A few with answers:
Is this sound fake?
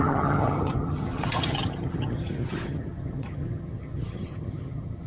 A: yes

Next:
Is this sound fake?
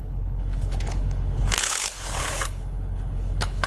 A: yes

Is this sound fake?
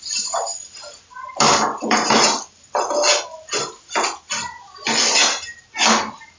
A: no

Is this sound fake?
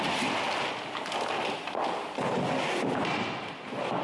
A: no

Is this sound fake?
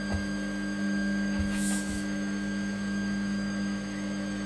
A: yes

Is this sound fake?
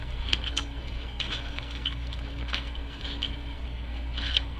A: yes